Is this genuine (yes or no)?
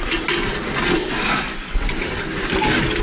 yes